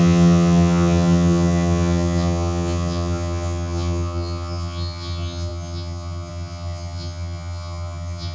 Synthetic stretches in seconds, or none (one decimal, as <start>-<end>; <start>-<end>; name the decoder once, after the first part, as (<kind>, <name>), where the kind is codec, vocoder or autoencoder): 0.0-8.3 (vocoder, HiFi-GAN)